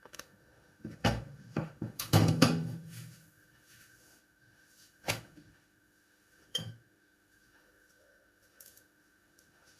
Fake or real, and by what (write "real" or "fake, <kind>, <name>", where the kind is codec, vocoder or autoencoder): fake, autoencoder, DAC-VAE